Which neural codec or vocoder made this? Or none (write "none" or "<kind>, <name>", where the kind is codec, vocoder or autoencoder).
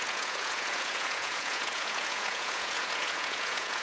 vocoder, Vocos